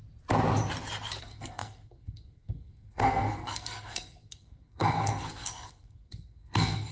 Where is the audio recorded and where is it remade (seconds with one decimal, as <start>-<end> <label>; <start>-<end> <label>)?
0.0-1.2 recorded; 1.2-6.9 remade

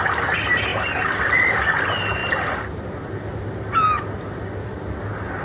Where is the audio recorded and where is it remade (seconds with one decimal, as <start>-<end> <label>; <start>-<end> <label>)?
0.0-5.4 recorded

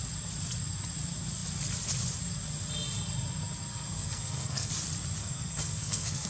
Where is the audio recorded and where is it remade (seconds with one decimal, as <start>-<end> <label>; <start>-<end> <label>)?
0.0-3.7 recorded; 3.7-4.7 remade; 4.7-5.2 recorded; 5.2-6.3 remade

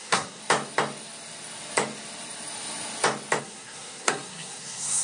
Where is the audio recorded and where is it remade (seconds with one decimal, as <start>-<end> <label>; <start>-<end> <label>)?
0.0-0.4 remade; 0.4-3.4 recorded; 3.4-5.0 remade

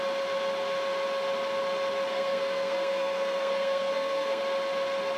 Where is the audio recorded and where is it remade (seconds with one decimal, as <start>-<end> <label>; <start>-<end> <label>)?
0.0-2.1 recorded; 2.1-4.4 remade; 4.4-5.2 recorded